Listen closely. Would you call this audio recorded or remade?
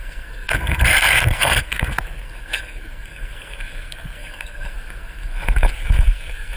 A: remade